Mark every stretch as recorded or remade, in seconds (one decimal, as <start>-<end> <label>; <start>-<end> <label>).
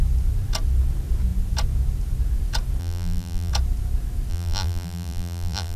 0.0-2.8 recorded; 2.8-3.5 remade; 3.5-4.3 recorded; 4.3-5.8 remade